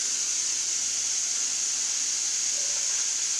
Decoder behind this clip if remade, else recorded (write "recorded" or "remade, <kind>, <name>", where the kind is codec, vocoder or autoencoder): recorded